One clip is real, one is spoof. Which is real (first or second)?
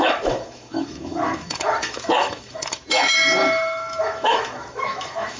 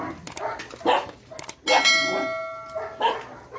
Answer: second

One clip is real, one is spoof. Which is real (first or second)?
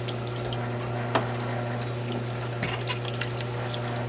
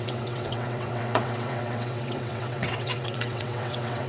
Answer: first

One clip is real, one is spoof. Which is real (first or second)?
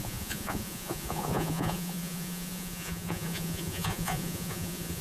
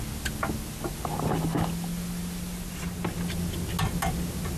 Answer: second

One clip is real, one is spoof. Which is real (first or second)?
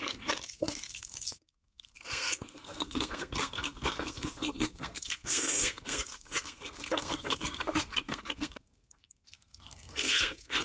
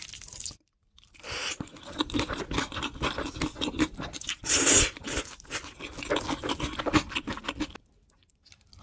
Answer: second